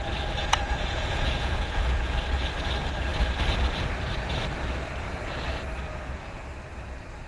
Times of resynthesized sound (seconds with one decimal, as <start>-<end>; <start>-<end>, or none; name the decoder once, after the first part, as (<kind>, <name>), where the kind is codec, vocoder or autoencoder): 0.4-2.2 (vocoder, Vocos); 5.9-6.4